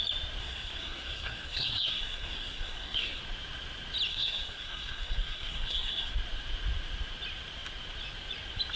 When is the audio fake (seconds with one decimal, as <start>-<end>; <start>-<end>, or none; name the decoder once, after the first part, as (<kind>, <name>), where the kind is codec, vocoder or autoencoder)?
0.4-3.2 (codec, SNAC); 4.1-6.1